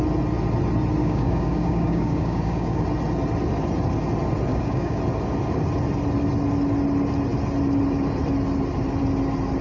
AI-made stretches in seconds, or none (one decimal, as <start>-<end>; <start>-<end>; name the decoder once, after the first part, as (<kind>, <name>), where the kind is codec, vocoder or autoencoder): 1.0-2.8 (codec, DAC); 4.5-5.0